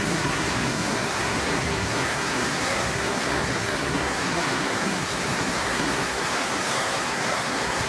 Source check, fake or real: fake